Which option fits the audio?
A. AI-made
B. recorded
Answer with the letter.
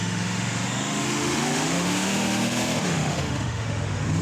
A